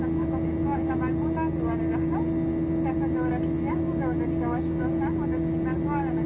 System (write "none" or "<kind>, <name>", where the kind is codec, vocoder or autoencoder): none